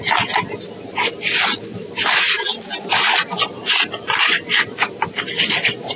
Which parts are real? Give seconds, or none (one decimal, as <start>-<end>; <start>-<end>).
0.0-1.7; 5.3-6.0